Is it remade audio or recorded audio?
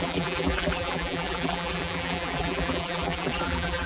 remade